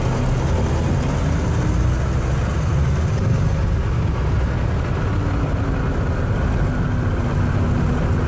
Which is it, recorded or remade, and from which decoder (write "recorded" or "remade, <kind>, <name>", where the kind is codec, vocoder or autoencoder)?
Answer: recorded